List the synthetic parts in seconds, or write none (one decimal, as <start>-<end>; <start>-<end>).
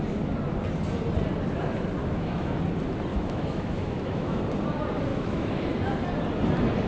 2.0-2.6; 3.1-4.4; 5.1-5.7